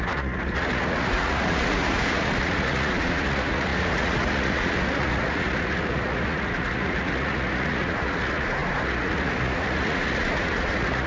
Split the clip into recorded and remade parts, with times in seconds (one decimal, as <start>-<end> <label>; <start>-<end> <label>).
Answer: 0.0-11.1 remade